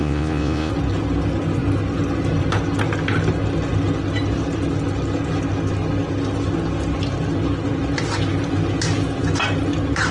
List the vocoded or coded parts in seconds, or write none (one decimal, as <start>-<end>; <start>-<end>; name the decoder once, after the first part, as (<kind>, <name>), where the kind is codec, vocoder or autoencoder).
0.0-0.7 (vocoder, Vocos)